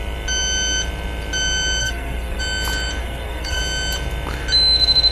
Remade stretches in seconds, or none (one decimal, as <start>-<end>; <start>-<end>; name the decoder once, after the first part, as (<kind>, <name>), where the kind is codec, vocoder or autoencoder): 1.8-2.4 (codec, SNAC); 3.0-3.6